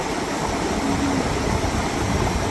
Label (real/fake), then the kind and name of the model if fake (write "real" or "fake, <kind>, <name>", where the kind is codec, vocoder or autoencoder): real